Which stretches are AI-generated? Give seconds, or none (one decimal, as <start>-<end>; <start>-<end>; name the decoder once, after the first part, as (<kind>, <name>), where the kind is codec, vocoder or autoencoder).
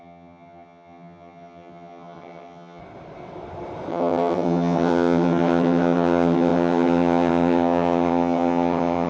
0.0-2.8 (vocoder, HiFi-GAN); 3.9-9.1